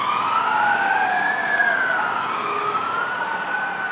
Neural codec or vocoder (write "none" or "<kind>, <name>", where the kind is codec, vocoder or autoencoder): none